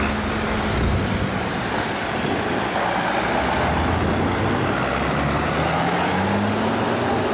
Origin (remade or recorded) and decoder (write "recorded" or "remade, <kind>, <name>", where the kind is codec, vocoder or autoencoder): recorded